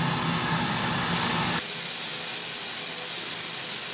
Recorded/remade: recorded